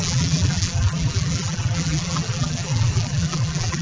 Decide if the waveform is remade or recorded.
remade